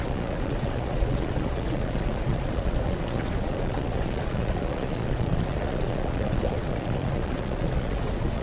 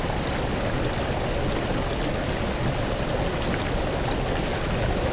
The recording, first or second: second